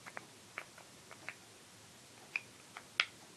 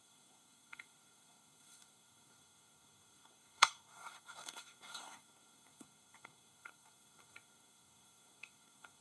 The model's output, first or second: second